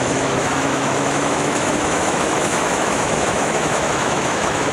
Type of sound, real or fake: fake